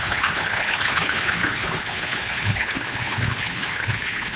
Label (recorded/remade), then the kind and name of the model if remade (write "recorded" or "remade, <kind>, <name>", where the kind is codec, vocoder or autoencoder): remade, codec, HILCodec